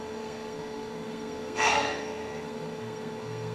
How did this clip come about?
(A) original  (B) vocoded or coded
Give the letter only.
B